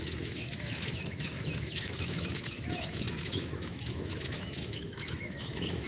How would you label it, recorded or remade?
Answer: remade